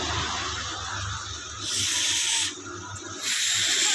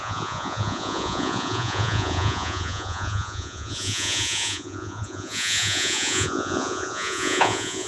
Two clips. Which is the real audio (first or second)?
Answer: first